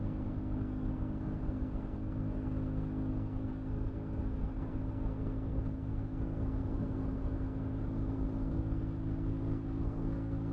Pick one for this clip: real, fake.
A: fake